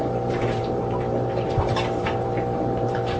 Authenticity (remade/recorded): remade